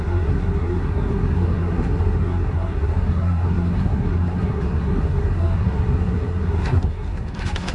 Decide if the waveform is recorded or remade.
remade